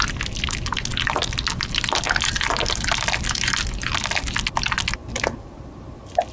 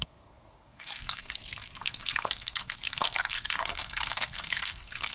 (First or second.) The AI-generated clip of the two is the second